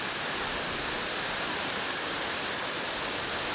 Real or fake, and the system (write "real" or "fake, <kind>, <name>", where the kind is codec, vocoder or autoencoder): real